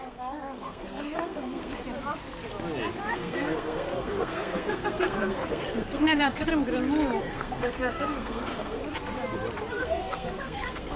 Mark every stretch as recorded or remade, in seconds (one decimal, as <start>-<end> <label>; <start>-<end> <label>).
0.0-1.8 remade; 1.8-3.1 recorded; 3.1-6.5 remade; 6.5-7.2 recorded; 7.2-8.8 remade; 8.8-9.7 recorded; 9.7-11.0 remade